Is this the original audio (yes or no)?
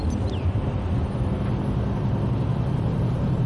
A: yes